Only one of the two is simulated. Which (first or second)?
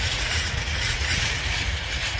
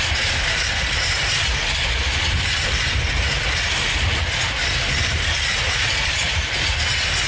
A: first